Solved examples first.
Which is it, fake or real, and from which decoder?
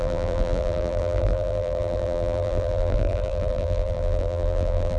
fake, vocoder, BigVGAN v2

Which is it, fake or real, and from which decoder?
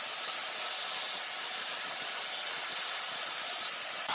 real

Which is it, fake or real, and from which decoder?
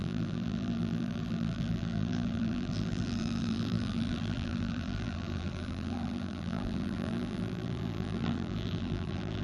fake, vocoder, BigVGAN v2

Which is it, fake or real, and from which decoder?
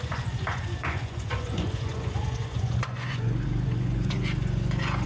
fake, vocoder, Vocos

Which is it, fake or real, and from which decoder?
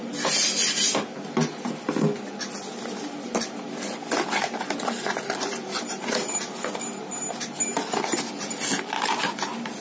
real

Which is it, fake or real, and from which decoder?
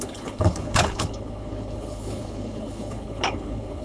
fake, codec, HILCodec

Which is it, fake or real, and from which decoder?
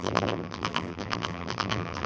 fake, vocoder, BigVGAN v2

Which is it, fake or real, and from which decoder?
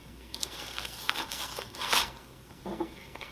fake, codec, SNAC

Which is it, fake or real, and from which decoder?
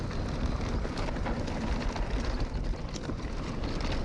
real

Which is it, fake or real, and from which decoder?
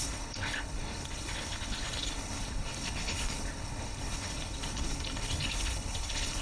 fake, codec, HILCodec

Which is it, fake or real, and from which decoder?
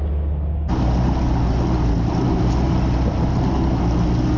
real